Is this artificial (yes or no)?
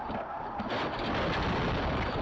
no